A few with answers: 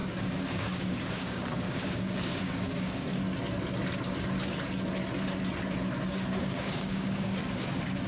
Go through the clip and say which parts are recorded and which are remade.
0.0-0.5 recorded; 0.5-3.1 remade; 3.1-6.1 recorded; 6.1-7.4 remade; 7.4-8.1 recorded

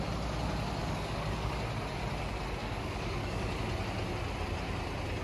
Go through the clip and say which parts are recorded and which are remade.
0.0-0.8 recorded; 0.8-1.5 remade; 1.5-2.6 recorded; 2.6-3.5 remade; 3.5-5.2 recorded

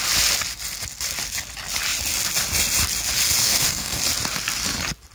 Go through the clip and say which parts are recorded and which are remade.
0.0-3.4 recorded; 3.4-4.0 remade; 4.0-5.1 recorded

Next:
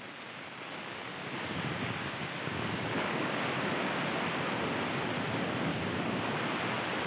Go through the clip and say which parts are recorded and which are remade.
0.0-1.1 recorded; 1.1-3.4 remade; 3.4-5.7 recorded; 5.7-6.3 remade; 6.3-7.1 recorded